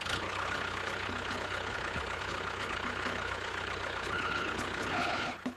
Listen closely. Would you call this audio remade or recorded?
remade